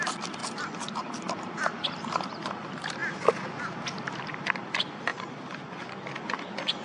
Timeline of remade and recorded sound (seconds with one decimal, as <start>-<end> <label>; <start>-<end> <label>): 0.0-0.4 remade; 0.4-2.2 recorded; 2.2-3.0 remade; 3.0-4.5 recorded; 4.5-6.8 remade